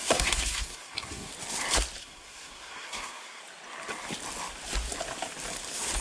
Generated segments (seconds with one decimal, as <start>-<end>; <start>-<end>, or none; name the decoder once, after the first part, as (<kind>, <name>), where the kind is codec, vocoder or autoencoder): 0.0-1.3 (codec, SNAC); 2.0-3.4